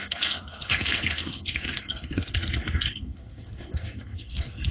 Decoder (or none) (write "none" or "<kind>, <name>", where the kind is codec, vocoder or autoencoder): codec, SNAC